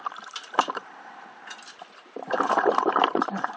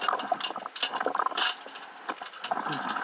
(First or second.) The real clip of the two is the second